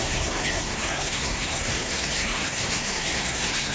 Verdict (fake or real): fake